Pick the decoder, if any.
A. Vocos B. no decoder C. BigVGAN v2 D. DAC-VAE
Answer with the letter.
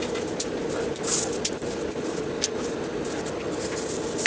B